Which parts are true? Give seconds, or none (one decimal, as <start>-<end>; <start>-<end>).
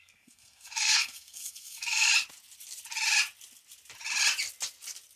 2.1-5.2